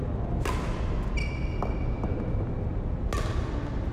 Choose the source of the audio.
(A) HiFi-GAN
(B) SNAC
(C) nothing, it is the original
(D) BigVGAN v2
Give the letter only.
C